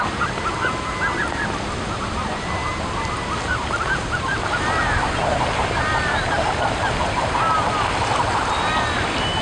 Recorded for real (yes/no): yes